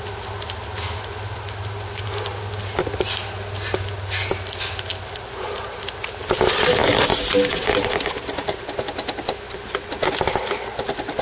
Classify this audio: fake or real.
real